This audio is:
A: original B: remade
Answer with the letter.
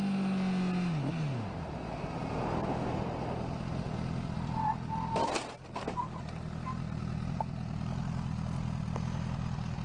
A